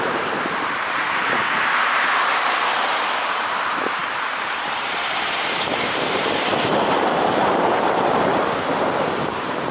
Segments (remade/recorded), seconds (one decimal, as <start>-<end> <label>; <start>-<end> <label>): 0.0-8.3 remade; 8.3-9.0 recorded; 9.0-9.7 remade